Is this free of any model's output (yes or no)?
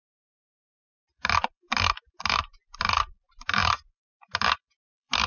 no